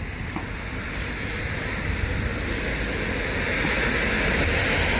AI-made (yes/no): no